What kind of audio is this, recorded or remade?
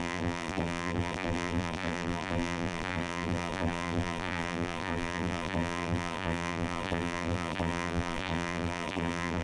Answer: remade